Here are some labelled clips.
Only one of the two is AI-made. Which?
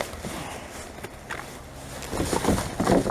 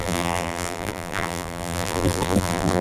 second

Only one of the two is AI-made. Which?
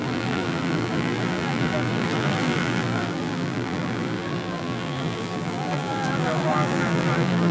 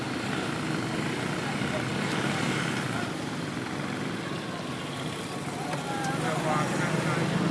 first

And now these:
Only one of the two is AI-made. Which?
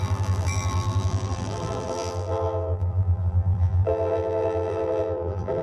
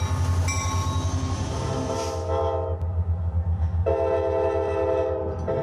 first